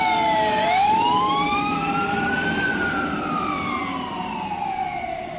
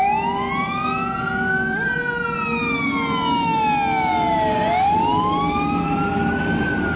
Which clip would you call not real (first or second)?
first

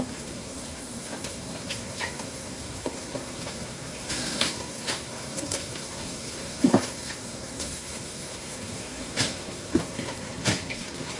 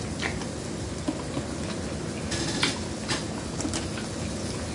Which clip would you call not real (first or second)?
first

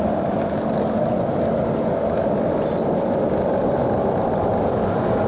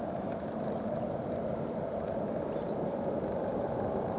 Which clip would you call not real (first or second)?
second